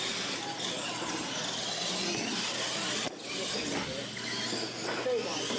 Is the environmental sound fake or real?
real